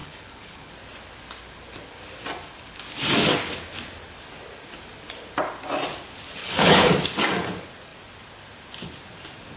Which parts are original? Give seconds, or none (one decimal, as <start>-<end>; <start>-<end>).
0.7-6.4; 6.9-9.6